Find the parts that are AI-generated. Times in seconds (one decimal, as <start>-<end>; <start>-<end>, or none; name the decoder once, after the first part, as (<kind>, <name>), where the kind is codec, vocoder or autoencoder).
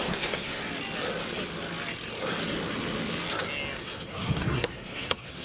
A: 0.0-0.6 (codec, SNAC); 3.8-5.4